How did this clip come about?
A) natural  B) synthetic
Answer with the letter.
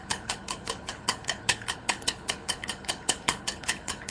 B